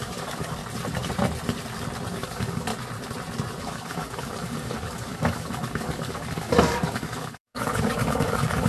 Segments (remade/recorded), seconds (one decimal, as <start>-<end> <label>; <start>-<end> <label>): 0.0-0.6 remade; 0.6-2.1 recorded; 2.1-2.7 remade; 2.7-3.6 recorded; 3.6-8.7 remade